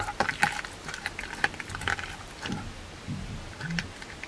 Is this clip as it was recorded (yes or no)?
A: yes